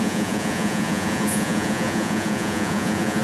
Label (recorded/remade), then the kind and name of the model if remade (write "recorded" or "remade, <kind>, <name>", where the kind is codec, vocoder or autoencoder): remade, vocoder, Vocos